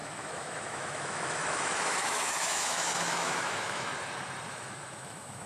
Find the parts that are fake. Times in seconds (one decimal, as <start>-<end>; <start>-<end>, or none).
0.0-3.9; 4.5-5.5